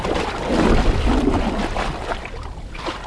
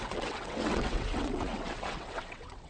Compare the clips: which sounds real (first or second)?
first